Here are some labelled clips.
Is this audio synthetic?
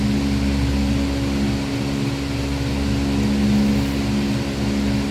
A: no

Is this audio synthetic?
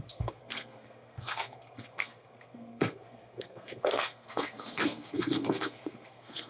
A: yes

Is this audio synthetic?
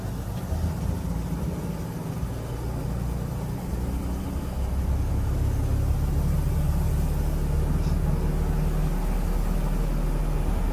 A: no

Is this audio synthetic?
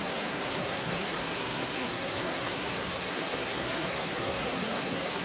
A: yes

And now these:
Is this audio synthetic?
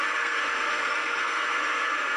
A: yes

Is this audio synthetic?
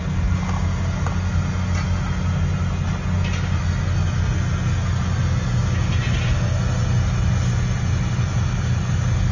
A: no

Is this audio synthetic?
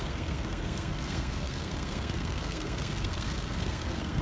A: yes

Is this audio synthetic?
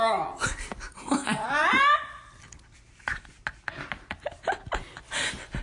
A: no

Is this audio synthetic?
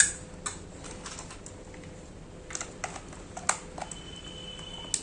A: no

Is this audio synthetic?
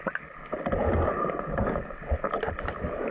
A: no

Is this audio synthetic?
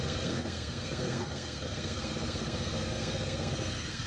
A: yes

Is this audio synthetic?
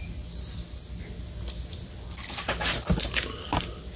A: no